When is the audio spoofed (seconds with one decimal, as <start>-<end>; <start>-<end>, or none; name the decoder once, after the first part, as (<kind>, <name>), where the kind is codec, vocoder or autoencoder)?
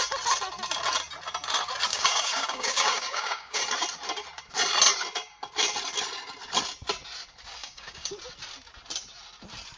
1.9-3.6 (codec, DAC); 7.6-8.1